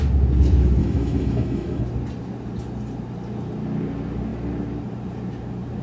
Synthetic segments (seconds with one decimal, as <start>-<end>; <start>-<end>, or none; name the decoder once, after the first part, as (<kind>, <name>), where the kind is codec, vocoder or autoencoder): 0.8-1.8 (autoencoder, DAC-VAE)